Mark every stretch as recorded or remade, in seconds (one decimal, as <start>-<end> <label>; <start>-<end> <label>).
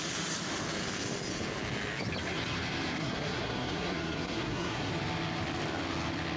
0.0-2.9 recorded; 2.9-4.9 remade; 4.9-6.4 recorded